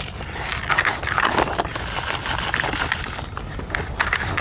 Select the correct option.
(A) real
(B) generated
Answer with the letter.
A